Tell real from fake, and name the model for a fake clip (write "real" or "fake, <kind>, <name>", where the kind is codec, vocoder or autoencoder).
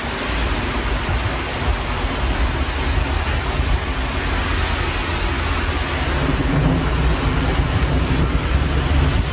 real